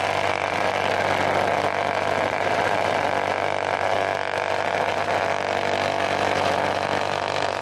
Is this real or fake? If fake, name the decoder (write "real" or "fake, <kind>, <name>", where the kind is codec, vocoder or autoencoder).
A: real